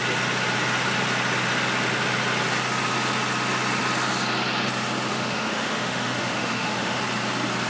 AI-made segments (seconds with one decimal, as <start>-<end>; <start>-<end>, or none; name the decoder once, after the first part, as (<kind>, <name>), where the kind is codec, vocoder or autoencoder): 5.1-7.0 (autoencoder, DAC-VAE)